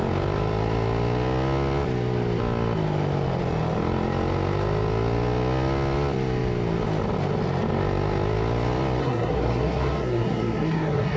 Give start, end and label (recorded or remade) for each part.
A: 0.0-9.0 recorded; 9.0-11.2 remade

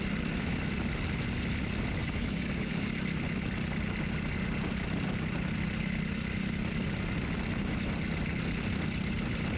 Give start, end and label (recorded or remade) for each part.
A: 0.0-2.0 recorded; 2.0-2.7 remade; 2.7-9.6 recorded

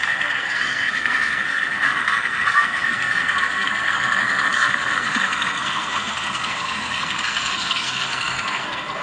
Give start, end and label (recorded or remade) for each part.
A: 0.0-9.0 remade

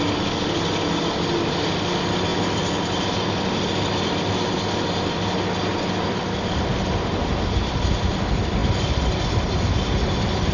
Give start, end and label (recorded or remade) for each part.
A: 0.0-10.5 recorded

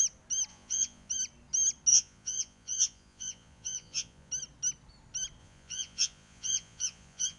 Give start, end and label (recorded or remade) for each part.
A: 0.0-0.5 recorded; 0.5-1.1 remade; 1.1-1.9 recorded; 1.9-4.3 remade; 4.3-5.4 recorded; 5.4-7.4 remade

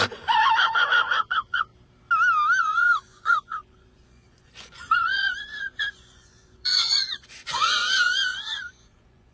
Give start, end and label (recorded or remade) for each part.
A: 0.0-1.7 remade; 1.7-2.6 recorded; 2.6-9.3 remade